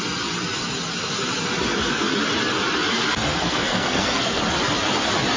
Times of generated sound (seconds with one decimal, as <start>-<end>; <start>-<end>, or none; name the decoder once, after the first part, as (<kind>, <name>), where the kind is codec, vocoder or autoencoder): 3.3-4.4 (codec, SNAC)